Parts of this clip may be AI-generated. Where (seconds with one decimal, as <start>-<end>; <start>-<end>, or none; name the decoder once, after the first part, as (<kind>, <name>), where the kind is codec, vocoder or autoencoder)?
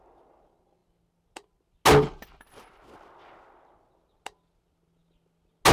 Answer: none